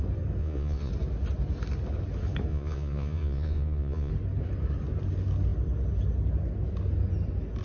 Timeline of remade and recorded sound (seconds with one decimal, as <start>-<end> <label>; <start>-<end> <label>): 0.0-0.4 recorded; 0.4-0.9 remade; 0.9-2.5 recorded; 2.5-4.1 remade; 4.1-7.6 recorded